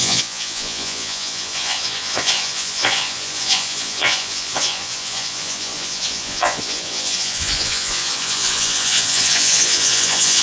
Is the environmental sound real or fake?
fake